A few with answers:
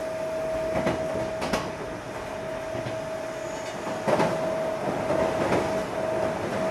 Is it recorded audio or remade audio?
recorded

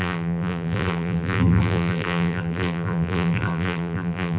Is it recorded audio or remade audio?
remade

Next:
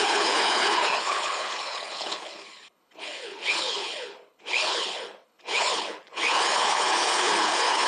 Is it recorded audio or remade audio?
remade